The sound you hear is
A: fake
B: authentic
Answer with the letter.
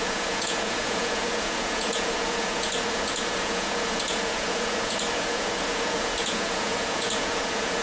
A